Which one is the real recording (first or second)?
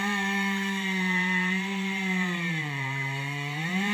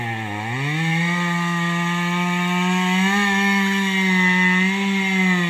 second